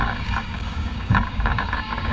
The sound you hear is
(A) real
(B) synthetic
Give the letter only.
B